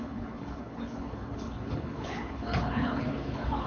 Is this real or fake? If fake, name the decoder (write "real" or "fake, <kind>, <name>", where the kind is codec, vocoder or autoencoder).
fake, codec, HILCodec